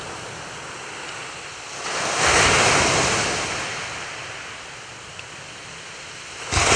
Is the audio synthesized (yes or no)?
no